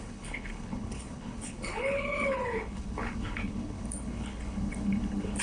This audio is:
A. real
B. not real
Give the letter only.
B